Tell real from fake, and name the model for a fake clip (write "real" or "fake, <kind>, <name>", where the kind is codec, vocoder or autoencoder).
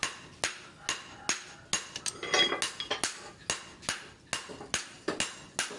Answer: real